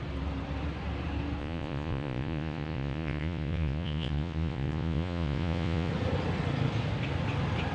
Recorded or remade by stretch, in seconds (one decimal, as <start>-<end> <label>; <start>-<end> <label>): 0.0-1.4 recorded; 1.4-5.9 remade; 5.9-7.7 recorded

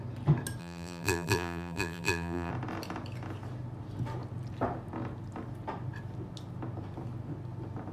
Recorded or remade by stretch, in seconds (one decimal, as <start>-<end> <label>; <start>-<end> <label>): 0.0-0.6 recorded; 0.6-2.5 remade; 2.5-7.9 recorded

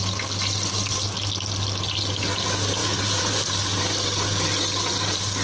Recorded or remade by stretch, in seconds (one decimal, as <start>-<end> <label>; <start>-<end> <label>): 0.0-2.8 recorded; 2.8-3.8 remade; 3.8-5.4 recorded

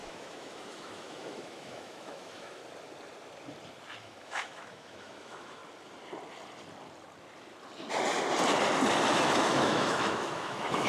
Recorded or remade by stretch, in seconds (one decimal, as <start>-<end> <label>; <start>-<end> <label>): 0.0-2.6 remade; 2.6-4.0 recorded; 4.0-5.6 remade; 5.6-9.1 recorded; 9.1-10.9 remade

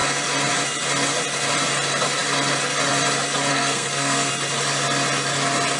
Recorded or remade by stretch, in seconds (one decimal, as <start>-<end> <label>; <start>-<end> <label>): 0.0-3.5 recorded; 3.5-4.3 remade; 4.3-5.8 recorded

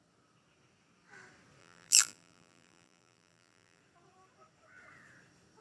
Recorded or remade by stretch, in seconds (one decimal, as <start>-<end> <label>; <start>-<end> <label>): 0.0-1.6 recorded; 1.6-3.8 remade; 3.8-5.6 recorded

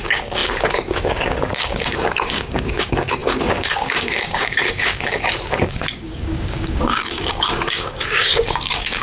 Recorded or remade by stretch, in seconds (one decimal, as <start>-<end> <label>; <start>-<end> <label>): 0.0-9.0 remade